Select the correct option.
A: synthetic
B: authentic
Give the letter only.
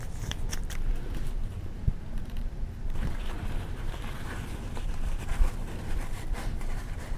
A